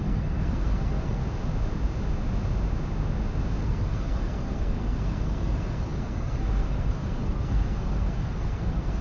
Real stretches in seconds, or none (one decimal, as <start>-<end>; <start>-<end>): 1.2-3.6